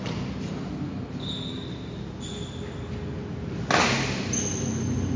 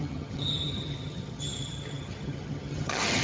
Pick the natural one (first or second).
first